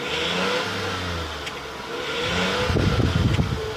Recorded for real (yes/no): yes